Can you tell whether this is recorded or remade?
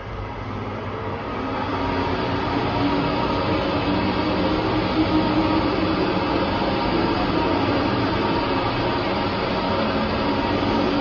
recorded